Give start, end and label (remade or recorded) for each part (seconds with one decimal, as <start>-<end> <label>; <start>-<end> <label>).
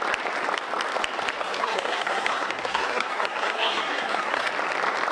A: 0.0-1.4 recorded; 1.4-4.5 remade; 4.5-5.1 recorded